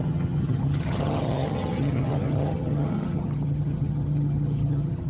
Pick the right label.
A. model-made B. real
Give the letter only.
A